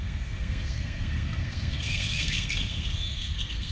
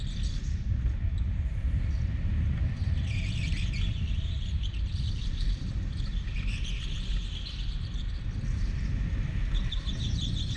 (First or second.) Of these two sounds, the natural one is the second